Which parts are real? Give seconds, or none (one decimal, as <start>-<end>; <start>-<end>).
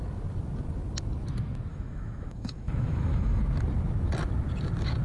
0.0-1.7; 3.4-5.0